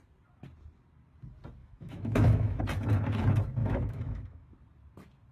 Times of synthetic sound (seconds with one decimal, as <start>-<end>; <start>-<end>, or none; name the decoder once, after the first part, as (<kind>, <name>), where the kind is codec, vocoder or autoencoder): 1.6-2.6 (autoencoder, DAC-VAE); 3.6-4.5